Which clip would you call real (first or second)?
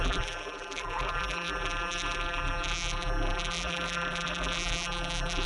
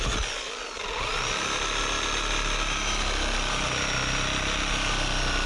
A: second